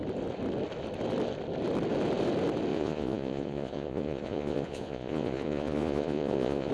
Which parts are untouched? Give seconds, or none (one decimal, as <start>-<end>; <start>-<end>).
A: 0.0-2.7